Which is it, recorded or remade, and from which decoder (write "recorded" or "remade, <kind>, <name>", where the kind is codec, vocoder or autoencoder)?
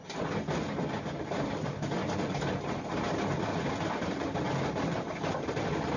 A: recorded